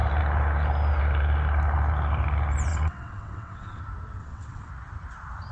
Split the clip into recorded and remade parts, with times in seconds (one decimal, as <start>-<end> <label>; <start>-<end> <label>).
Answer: 0.0-2.7 recorded; 2.7-3.8 remade; 3.8-4.2 recorded; 4.2-4.7 remade; 4.7-5.5 recorded